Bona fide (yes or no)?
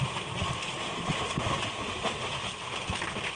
yes